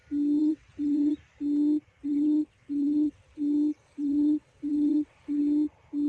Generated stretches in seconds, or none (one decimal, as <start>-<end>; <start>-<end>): 0.4-1.1; 2.0-3.4; 3.8-5.4